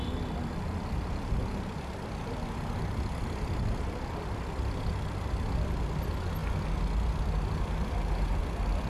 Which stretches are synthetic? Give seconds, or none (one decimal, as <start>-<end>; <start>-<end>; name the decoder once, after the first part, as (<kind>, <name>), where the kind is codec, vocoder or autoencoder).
none

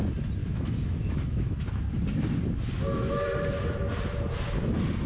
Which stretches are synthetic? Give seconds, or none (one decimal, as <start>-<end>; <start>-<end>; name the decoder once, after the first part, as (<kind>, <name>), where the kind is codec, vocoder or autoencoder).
0.4-1.8 (autoencoder, DAC-VAE)